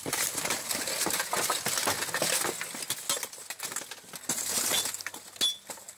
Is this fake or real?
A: real